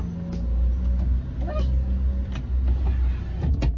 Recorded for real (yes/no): yes